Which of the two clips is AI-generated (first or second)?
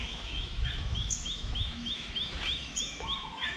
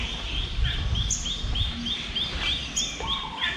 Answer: first